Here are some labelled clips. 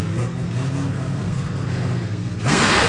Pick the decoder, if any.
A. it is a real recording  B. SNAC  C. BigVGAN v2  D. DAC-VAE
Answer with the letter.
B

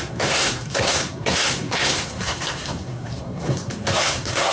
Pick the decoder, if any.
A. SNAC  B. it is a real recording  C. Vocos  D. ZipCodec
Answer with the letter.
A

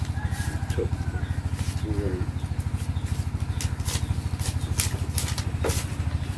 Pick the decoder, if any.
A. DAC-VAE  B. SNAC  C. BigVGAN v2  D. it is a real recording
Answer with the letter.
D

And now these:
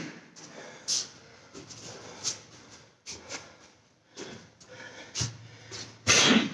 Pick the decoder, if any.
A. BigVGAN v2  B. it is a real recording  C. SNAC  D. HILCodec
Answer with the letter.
B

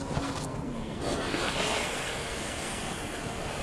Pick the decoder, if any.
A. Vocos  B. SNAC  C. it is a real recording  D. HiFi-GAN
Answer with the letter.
B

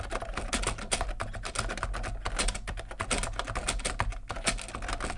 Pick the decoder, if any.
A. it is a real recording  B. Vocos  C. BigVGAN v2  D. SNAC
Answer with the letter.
A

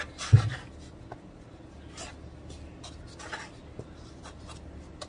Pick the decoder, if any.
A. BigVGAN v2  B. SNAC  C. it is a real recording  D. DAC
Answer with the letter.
C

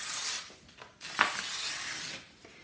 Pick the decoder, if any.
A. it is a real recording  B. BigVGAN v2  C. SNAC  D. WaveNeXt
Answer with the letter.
A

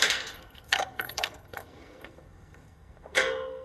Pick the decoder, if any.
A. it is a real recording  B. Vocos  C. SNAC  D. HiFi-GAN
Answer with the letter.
C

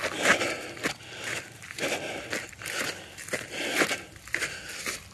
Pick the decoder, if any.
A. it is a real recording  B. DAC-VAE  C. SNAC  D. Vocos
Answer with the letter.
A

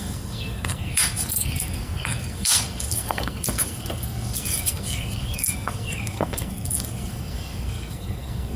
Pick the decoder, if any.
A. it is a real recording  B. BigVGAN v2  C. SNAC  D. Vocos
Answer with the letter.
C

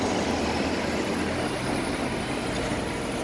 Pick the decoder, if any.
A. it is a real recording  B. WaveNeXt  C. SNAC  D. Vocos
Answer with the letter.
A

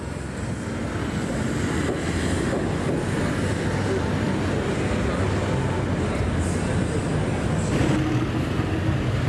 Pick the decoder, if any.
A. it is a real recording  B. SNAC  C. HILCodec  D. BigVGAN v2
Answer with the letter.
A